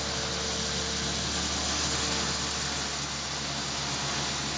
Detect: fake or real real